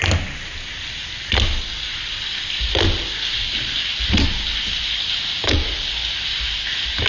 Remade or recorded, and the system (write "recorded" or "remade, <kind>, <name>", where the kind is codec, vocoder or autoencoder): recorded